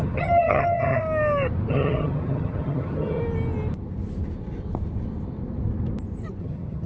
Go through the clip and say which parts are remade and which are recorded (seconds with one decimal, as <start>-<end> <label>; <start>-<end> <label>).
0.0-1.0 remade; 1.0-1.7 recorded; 1.7-3.2 remade; 3.2-6.4 recorded; 6.4-6.9 remade